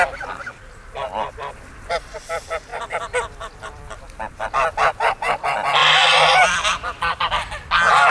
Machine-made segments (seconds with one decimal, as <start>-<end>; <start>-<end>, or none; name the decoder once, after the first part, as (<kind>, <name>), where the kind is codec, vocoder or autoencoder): 2.7-4.0 (vocoder, BigVGAN v2); 5.8-7.3